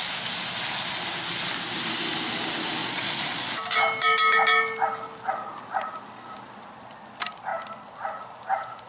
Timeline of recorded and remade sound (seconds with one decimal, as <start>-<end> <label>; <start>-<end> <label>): 0.0-2.8 recorded; 2.8-3.5 remade; 3.5-8.9 recorded